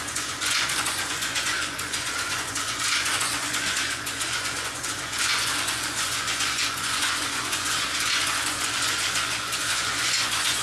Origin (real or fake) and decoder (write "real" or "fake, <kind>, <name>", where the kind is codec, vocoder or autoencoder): fake, vocoder, Vocos